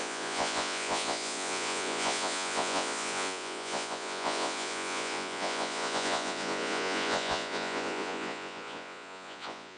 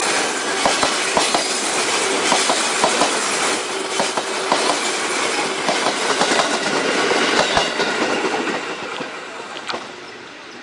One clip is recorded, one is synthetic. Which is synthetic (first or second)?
first